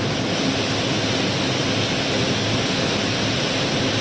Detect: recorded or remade recorded